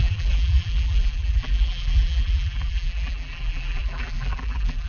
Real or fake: fake